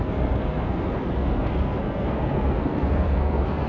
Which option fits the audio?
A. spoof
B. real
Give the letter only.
A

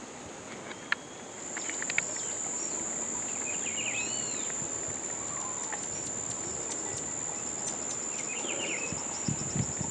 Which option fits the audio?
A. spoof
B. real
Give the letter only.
B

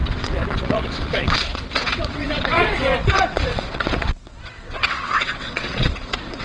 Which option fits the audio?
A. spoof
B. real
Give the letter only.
A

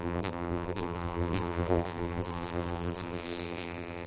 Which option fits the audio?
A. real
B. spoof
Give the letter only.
B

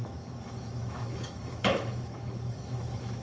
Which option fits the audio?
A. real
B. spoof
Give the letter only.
B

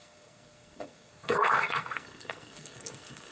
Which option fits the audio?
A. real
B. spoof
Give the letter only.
B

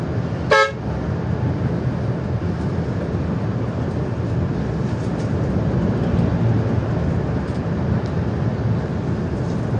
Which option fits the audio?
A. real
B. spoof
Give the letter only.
A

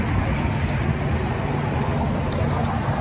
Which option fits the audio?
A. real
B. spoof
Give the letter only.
A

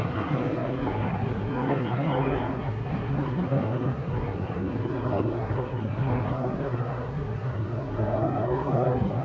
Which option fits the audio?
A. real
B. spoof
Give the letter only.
B